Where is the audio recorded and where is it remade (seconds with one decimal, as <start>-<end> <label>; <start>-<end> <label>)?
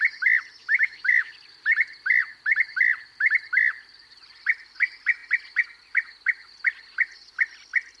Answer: 0.0-0.6 recorded; 0.6-1.3 remade; 1.3-8.0 recorded